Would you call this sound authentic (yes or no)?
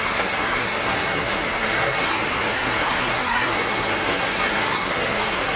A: no